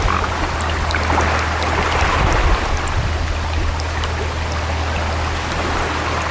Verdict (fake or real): real